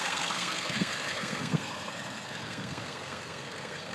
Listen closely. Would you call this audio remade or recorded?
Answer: remade